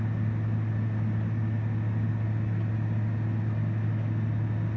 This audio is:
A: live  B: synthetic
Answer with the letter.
A